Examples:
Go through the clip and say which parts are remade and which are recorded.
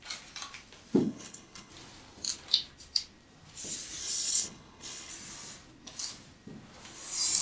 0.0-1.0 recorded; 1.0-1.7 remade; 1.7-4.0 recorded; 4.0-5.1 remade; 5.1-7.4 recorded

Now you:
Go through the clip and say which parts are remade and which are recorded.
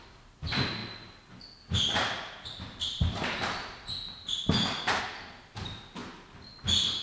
0.0-0.8 remade; 0.8-5.0 recorded; 5.0-6.0 remade; 6.0-7.0 recorded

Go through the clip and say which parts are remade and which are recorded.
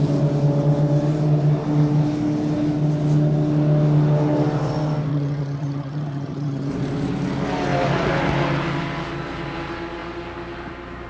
0.0-5.1 recorded; 5.1-6.7 remade; 6.7-11.1 recorded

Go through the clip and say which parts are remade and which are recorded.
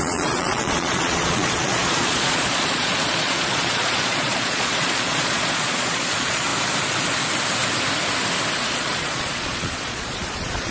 0.0-6.5 remade; 6.5-8.6 recorded; 8.6-10.7 remade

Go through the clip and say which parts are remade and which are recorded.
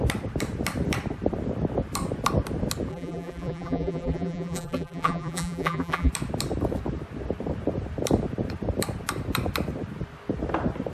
0.0-2.9 recorded; 2.9-6.1 remade; 6.1-10.9 recorded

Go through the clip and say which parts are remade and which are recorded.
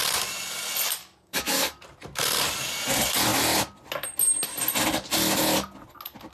0.0-1.0 recorded; 1.0-1.8 remade; 1.8-6.3 recorded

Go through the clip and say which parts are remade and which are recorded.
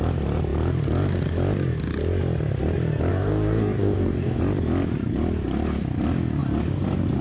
0.0-3.1 recorded; 3.1-4.4 remade; 4.4-7.2 recorded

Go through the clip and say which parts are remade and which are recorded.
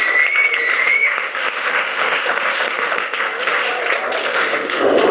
0.0-0.7 recorded; 0.7-3.8 remade; 3.8-4.2 recorded; 4.2-5.1 remade